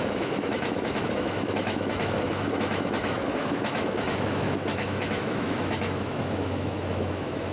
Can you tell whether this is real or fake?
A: fake